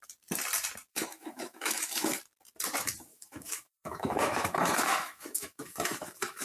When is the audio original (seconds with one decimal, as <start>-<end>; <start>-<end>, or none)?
0.0-0.9; 2.2-3.1

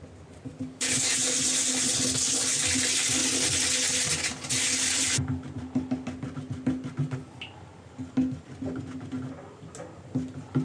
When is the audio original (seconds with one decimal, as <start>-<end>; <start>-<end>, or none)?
0.0-0.5; 1.1-10.6

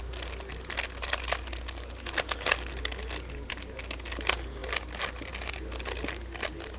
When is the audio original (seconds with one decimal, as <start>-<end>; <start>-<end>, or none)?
0.0-6.8